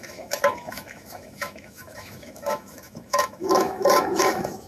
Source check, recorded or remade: remade